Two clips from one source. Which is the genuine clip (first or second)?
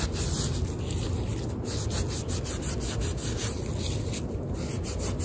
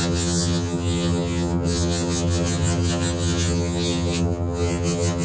first